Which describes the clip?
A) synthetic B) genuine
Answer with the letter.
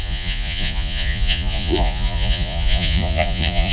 A